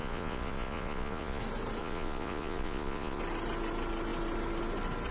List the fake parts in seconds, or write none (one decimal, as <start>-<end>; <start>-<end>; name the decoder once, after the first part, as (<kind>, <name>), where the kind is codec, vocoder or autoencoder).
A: 0.0-1.4 (vocoder, Vocos); 1.8-3.2